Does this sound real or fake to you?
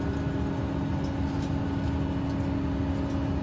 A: real